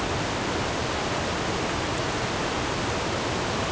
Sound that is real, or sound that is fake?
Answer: real